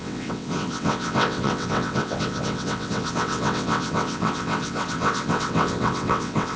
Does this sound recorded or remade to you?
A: remade